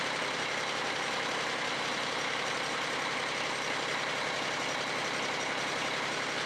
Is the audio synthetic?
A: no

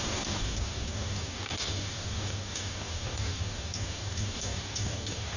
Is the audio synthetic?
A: yes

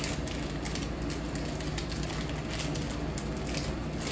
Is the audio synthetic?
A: no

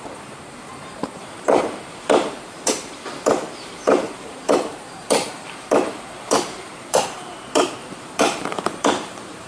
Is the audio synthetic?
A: yes